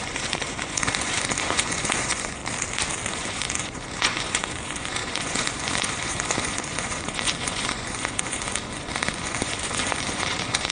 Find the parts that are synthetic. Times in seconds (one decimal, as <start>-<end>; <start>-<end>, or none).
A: 0.0-2.4; 3.1-10.7